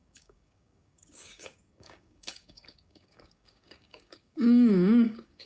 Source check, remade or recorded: remade